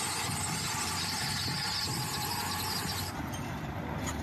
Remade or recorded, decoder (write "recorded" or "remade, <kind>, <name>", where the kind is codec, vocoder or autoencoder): recorded